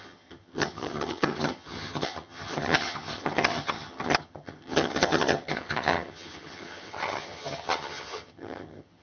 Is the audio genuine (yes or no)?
no